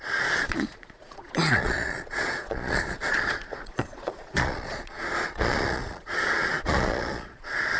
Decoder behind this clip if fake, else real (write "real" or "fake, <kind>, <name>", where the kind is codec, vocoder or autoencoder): fake, vocoder, Vocos